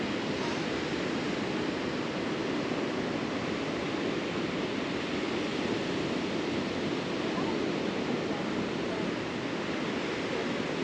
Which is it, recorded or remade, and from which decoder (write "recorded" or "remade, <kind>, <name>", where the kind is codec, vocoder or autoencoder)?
recorded